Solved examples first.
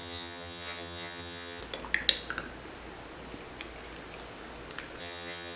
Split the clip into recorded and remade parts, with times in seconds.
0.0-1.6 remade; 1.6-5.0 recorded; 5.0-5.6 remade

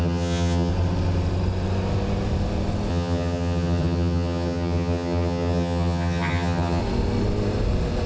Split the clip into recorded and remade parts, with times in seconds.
0.0-0.7 remade; 0.7-2.9 recorded; 2.9-6.8 remade; 6.8-8.1 recorded

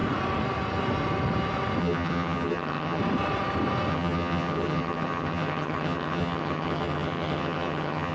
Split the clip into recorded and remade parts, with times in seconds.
0.0-1.8 recorded; 1.8-3.0 remade; 3.0-3.9 recorded; 3.9-8.1 remade